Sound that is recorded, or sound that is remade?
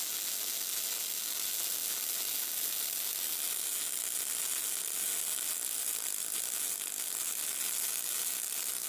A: recorded